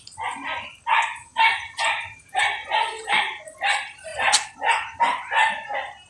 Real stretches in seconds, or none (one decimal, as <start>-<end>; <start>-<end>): 0.0-1.3; 3.4-6.1